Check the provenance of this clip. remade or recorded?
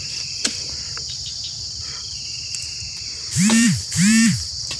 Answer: remade